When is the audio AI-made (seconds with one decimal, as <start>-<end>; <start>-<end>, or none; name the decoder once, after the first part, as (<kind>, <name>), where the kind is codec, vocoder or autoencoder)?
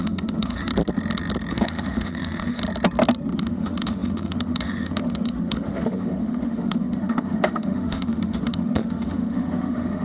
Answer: 0.0-0.7 (autoencoder, DAC-VAE); 1.5-2.6; 3.4-10.0